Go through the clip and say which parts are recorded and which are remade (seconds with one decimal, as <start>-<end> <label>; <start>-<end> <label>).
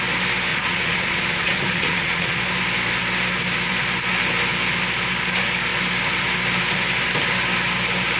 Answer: 0.0-0.5 recorded; 0.5-2.4 remade; 2.4-8.2 recorded